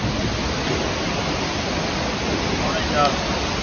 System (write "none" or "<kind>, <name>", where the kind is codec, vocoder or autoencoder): none